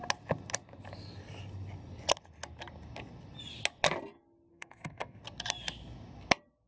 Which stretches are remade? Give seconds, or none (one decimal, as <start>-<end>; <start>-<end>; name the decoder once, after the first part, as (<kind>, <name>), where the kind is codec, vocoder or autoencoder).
4.5-5.2 (codec, SNAC)